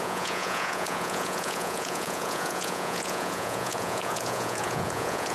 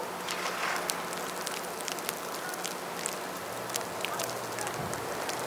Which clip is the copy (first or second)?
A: first